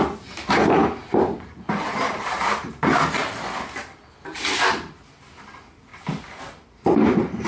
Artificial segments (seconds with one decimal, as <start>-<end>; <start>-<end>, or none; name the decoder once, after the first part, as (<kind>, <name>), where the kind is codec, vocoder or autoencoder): 1.0-3.0 (vocoder, BigVGAN v2); 5.9-6.4